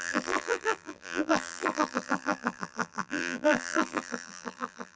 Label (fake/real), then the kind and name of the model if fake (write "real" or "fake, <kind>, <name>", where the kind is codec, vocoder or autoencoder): fake, vocoder, BigVGAN v2